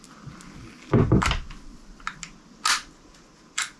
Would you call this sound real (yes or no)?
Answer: yes